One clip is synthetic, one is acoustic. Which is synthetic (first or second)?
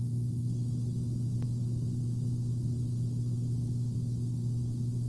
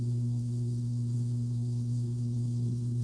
second